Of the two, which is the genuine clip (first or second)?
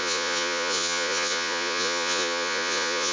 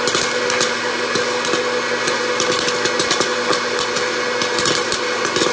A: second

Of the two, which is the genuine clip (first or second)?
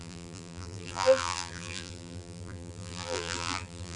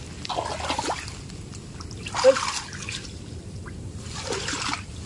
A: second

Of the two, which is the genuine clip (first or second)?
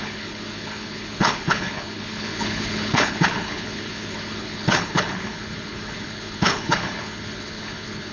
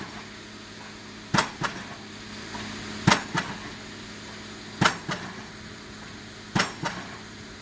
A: second